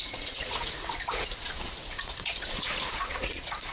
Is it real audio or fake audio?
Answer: fake